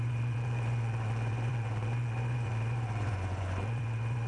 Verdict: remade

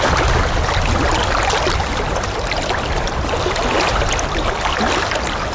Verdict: recorded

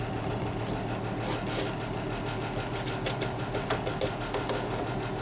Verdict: recorded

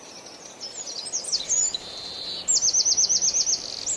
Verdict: recorded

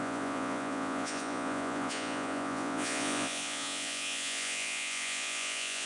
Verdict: remade